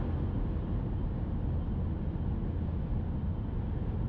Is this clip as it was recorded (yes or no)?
yes